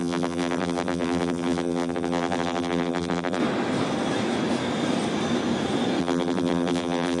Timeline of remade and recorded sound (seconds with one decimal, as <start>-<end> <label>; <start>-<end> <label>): 0.0-3.4 remade; 3.4-6.0 recorded; 6.0-7.2 remade